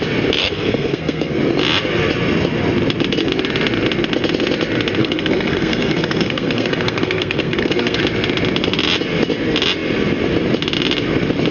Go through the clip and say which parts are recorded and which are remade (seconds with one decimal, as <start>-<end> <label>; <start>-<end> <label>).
0.0-0.4 recorded; 0.4-1.4 remade; 1.4-5.0 recorded; 5.0-8.0 remade; 8.0-11.5 recorded